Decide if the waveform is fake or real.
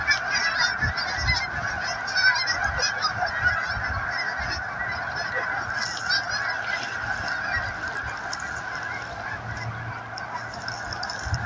real